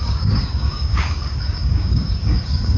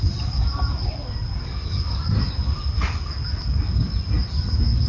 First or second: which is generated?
first